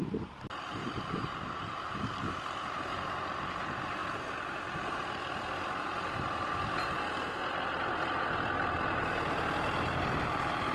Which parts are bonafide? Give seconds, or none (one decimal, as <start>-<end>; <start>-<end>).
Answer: 0.0-0.8; 2.2-4.0; 5.0-10.7